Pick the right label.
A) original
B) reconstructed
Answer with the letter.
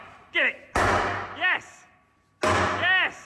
A